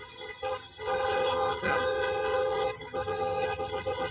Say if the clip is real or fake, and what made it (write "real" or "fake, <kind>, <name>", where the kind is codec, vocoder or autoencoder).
fake, vocoder, HiFi-GAN